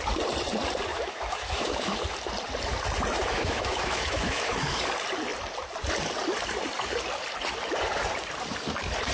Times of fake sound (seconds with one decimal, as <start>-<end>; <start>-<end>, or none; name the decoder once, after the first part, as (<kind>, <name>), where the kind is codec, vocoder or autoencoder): 0.9-2.0 (autoencoder, DAC-VAE); 3.2-4.8